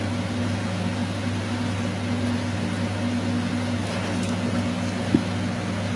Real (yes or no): yes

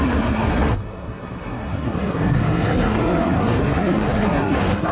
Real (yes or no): no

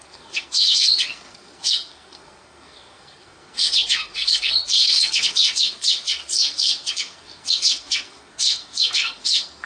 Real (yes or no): no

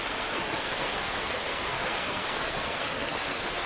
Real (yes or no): no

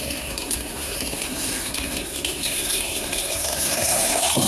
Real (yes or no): no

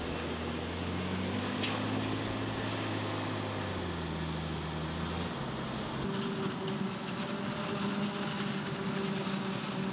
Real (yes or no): yes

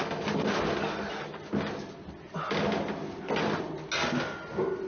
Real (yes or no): yes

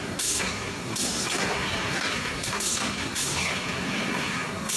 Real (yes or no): no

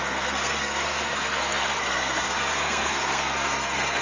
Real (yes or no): no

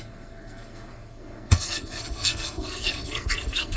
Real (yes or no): no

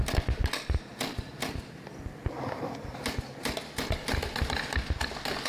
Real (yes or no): yes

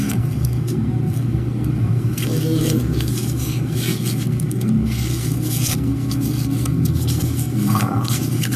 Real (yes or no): no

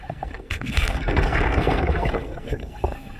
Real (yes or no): no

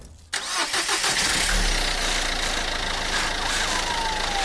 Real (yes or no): yes